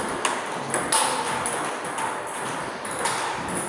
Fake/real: real